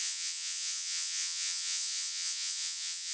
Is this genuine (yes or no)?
no